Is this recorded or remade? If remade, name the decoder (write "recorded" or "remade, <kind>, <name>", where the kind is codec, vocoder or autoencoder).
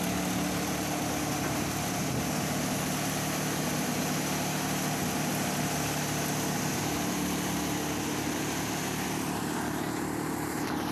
recorded